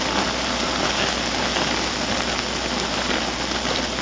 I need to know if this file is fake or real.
real